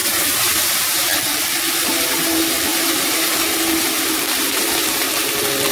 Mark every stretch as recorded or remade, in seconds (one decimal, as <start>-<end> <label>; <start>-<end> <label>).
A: 0.0-1.1 remade; 1.1-1.8 recorded; 1.8-5.7 remade